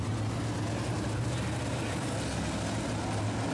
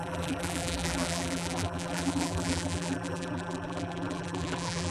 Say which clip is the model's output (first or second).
second